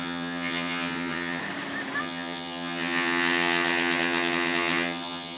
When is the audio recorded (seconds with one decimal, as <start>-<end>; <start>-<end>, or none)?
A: 1.4-2.0